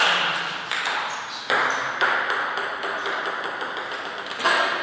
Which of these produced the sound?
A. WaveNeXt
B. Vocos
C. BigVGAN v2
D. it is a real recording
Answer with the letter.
D